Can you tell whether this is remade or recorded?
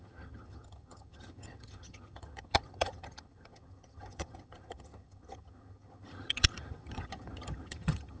remade